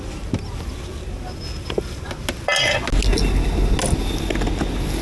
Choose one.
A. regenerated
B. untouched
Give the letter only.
B